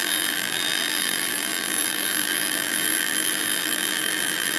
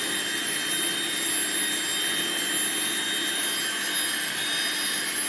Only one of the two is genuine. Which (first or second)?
second